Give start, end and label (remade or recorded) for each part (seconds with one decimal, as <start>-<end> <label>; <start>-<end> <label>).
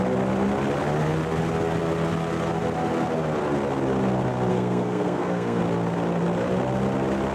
0.0-4.5 recorded; 4.5-5.6 remade; 5.6-7.3 recorded